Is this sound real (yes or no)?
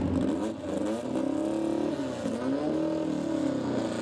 yes